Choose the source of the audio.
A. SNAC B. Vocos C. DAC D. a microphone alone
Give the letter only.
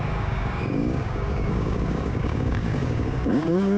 C